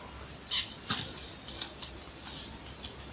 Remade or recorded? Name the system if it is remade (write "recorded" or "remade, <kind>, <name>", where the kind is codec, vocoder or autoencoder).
recorded